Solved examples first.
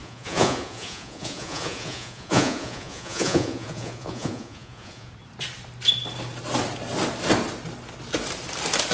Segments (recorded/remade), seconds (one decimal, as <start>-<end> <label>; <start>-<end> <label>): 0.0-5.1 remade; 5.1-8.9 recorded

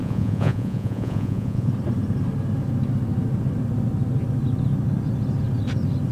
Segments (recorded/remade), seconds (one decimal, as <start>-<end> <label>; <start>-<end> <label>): 0.0-1.7 remade; 1.7-6.1 recorded

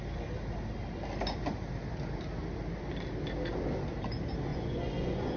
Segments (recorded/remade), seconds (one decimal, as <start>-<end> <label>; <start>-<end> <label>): 0.0-4.5 recorded; 4.5-5.4 remade

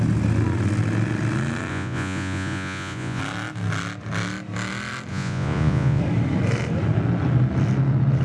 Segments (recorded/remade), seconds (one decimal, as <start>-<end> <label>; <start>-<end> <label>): 0.0-1.7 recorded; 1.7-3.2 remade; 3.2-5.1 recorded; 5.1-6.0 remade; 6.0-8.2 recorded

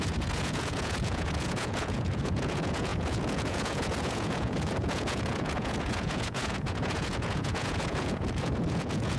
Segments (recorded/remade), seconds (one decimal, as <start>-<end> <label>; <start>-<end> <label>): 0.0-9.2 remade

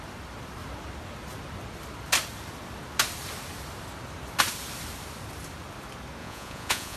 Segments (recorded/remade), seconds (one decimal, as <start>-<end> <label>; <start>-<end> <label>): 0.0-6.2 recorded; 6.2-7.0 remade